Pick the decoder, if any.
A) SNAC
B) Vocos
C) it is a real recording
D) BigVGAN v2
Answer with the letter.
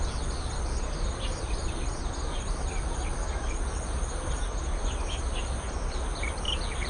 C